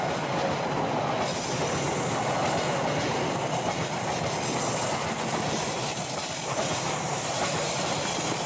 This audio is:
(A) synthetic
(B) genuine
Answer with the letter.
B